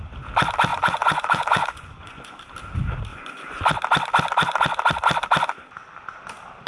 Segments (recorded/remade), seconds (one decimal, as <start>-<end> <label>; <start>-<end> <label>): 0.0-0.7 recorded; 0.7-2.4 remade; 2.4-3.1 recorded; 3.1-3.6 remade; 3.6-6.7 recorded